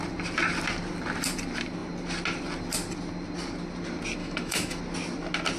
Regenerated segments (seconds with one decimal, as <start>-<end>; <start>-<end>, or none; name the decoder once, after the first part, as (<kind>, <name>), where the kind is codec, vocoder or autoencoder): 4.2-4.8 (autoencoder, DAC-VAE)